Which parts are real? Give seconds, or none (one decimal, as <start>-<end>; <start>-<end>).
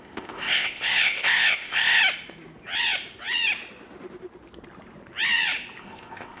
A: 2.0-5.8